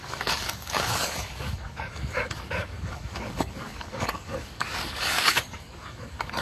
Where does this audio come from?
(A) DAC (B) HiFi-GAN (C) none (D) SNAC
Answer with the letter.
A